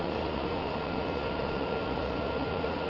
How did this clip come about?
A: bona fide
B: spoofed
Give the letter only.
B